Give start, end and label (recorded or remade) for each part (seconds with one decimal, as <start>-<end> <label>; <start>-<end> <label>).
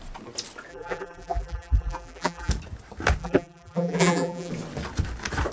0.0-0.7 recorded; 0.7-2.5 remade; 2.5-3.2 recorded; 3.2-4.5 remade; 4.5-5.5 recorded